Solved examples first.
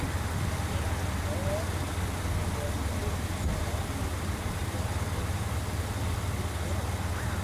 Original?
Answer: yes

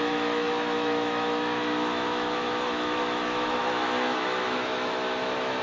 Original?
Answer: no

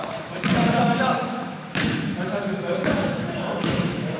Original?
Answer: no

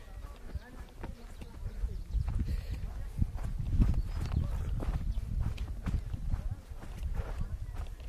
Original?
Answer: yes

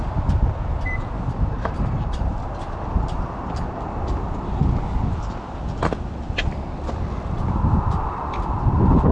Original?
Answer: yes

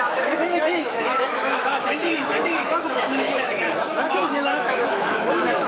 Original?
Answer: no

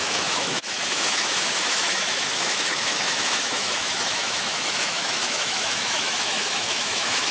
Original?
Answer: no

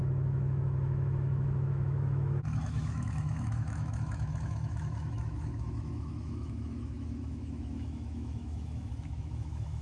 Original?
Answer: no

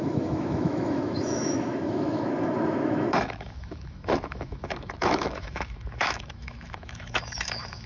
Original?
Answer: no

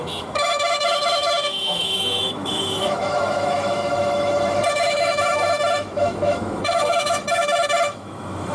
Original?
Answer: no